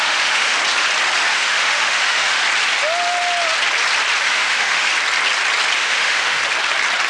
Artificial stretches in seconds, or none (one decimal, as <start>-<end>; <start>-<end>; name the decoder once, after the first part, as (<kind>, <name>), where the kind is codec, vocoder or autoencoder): 0.0-0.6 (autoencoder, DAC-VAE); 1.3-2.4; 4.2-4.9; 5.8-6.4

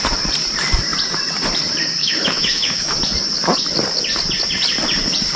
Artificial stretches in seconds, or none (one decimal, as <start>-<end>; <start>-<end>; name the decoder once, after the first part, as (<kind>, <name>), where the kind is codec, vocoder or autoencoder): 2.0-2.9 (autoencoder, DAC-VAE)

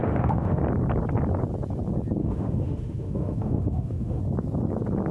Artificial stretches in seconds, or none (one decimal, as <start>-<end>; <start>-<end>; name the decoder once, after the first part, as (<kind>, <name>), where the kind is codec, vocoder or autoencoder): 0.0-0.6 (autoencoder, DAC-VAE); 2.2-4.2

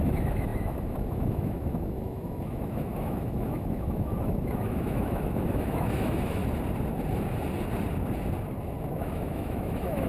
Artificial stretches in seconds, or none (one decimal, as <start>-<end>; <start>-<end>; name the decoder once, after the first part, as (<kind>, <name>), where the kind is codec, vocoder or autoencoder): 0.0-6.4 (autoencoder, DAC-VAE); 8.9-10.1

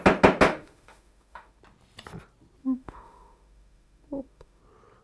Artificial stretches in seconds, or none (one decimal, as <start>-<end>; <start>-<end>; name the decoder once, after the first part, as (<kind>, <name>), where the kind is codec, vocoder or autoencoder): 0.5-1.6 (autoencoder, DAC-VAE); 2.6-4.6